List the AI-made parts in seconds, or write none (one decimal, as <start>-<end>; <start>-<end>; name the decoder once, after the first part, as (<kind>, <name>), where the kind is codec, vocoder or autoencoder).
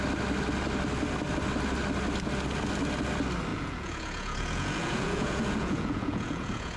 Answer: 3.5-6.8 (vocoder, Vocos)